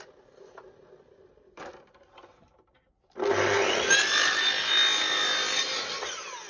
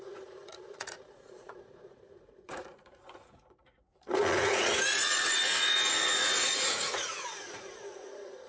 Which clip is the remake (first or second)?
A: second